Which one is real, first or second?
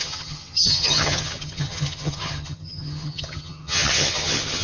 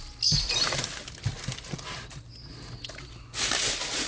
second